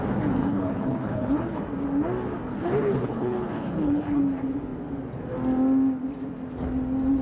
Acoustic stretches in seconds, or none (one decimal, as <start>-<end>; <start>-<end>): 0.0-0.4; 1.6-2.5; 4.2-7.2